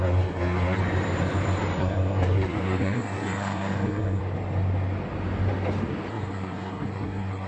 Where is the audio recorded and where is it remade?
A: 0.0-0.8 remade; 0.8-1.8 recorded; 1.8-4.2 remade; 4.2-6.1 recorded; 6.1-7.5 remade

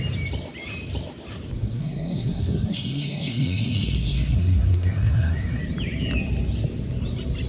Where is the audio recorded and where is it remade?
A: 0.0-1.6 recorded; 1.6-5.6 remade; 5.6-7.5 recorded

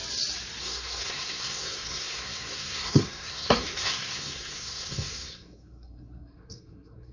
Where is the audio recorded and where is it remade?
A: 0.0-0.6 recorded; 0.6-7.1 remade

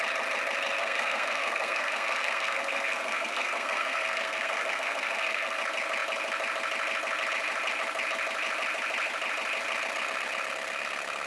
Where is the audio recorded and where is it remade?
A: 0.0-0.8 recorded; 0.8-5.6 remade; 5.6-11.3 recorded